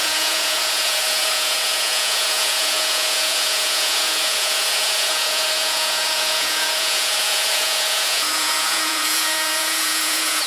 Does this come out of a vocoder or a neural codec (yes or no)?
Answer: yes